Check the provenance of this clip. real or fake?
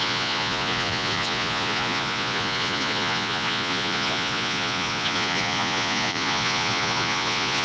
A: fake